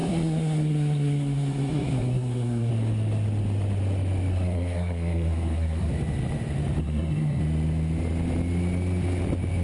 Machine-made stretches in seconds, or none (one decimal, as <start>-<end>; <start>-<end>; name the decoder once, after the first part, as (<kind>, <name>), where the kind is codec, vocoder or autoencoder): 0.0-2.7 (codec, SNAC); 4.3-5.9; 6.8-7.4